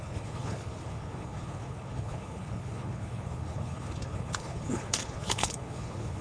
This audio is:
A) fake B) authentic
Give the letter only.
A